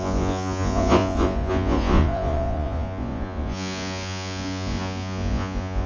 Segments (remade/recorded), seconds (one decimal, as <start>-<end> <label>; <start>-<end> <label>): 0.0-5.9 remade